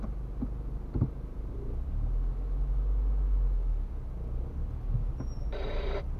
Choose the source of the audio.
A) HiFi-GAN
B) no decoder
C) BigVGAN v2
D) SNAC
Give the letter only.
B